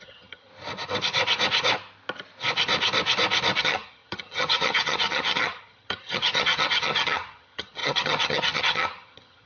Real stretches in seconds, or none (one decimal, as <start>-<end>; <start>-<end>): 0.5-3.6